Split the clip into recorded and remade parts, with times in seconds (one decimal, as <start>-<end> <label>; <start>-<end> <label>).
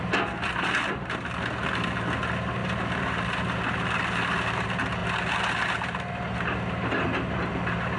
0.0-8.0 recorded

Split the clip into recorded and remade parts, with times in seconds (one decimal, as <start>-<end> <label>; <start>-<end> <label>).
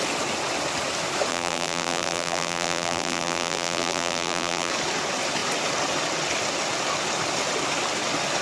0.0-1.3 recorded; 1.3-4.7 remade; 4.7-8.4 recorded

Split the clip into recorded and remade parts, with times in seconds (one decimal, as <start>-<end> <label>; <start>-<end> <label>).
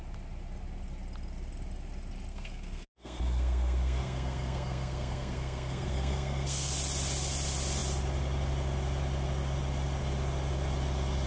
0.0-2.3 recorded; 2.3-6.7 remade; 6.7-11.3 recorded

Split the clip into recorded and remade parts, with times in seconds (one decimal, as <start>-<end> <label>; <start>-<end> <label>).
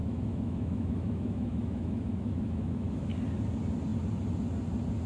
0.0-3.1 remade; 3.1-5.1 recorded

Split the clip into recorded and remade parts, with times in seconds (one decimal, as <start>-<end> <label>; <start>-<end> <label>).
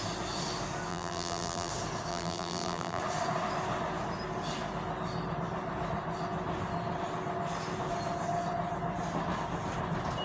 0.0-0.9 recorded; 0.9-1.7 remade; 1.7-2.1 recorded; 2.1-3.0 remade; 3.0-10.2 recorded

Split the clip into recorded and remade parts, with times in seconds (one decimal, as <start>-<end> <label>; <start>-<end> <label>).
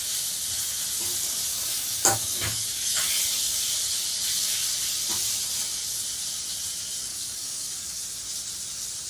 0.0-1.5 recorded; 1.5-3.2 remade; 3.2-7.1 recorded; 7.1-8.0 remade; 8.0-9.1 recorded